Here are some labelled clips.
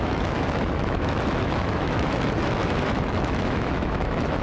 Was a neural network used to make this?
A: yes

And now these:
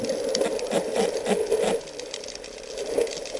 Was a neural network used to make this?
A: no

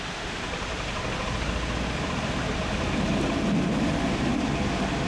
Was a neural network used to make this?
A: no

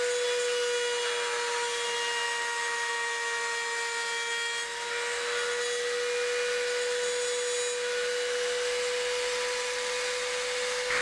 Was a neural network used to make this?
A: no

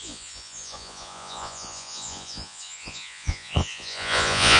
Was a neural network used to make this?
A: yes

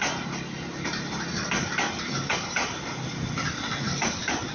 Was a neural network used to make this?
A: no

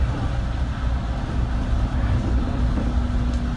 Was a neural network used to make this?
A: no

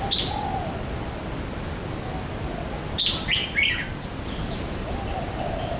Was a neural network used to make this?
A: no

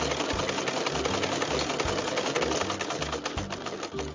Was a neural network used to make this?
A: no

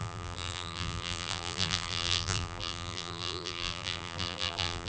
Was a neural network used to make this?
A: yes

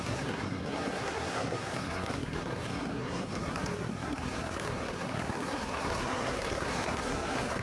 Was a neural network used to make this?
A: yes